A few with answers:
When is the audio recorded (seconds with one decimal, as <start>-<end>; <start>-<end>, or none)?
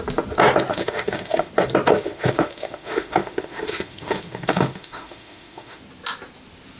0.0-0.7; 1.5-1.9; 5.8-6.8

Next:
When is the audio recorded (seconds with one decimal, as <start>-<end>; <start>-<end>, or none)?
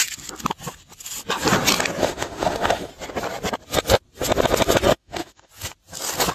0.0-2.0; 2.9-4.9; 5.5-6.3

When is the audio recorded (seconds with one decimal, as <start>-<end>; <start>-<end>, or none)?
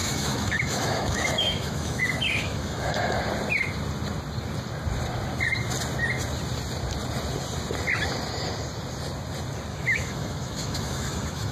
3.2-9.7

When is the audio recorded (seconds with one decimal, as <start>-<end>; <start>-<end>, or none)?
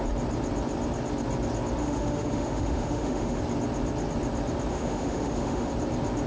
0.0-1.8; 3.4-4.7; 5.7-6.3